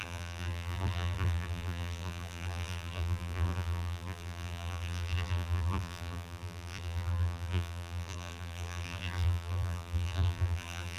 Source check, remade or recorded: remade